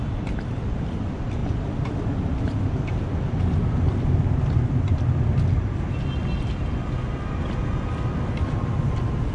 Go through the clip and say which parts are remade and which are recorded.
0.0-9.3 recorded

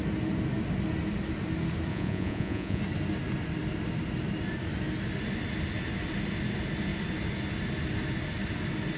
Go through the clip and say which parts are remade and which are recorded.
0.0-1.9 recorded; 1.9-2.8 remade; 2.8-9.0 recorded

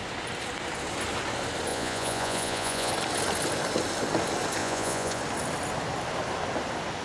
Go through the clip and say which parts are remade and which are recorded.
0.0-1.7 recorded; 1.7-2.9 remade; 2.9-4.6 recorded; 4.6-5.2 remade; 5.2-7.0 recorded

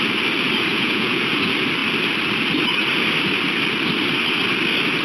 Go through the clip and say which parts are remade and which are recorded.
0.0-0.7 recorded; 0.7-1.2 remade; 1.2-5.0 recorded

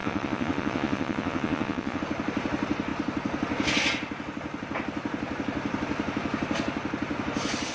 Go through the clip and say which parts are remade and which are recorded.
0.0-2.0 remade; 2.0-7.7 recorded

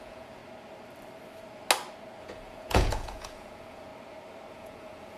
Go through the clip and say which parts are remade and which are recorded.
0.0-0.4 remade; 0.4-2.2 recorded; 2.2-3.9 remade; 3.9-4.5 recorded; 4.5-5.2 remade

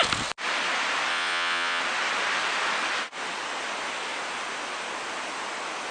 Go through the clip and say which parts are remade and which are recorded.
0.0-1.1 recorded; 1.1-1.8 remade; 1.8-5.9 recorded